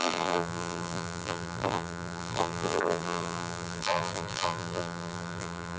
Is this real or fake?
fake